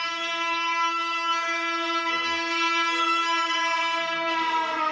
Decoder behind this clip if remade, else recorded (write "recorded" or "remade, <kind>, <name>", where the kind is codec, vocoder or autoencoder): remade, codec, SNAC